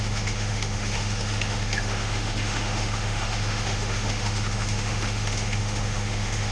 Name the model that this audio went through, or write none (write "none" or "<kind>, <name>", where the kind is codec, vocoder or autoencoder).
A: autoencoder, DAC-VAE